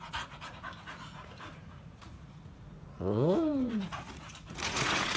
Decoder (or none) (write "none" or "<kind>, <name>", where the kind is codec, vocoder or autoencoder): vocoder, Vocos